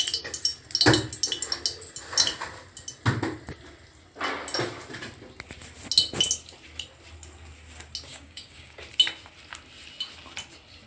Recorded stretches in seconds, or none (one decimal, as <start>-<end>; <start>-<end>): 0.0-8.1; 8.8-10.9